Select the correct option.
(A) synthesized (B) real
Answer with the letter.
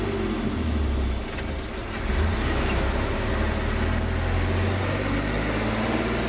B